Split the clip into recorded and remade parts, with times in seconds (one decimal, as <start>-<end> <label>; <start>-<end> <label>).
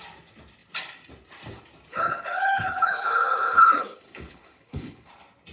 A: 0.0-1.9 recorded; 1.9-5.1 remade; 5.1-5.5 recorded